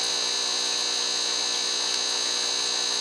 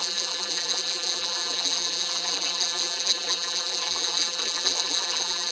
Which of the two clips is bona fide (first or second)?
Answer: first